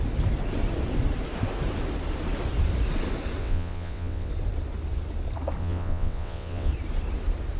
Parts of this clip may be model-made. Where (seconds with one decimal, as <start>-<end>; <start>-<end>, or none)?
3.4-4.3; 5.6-6.7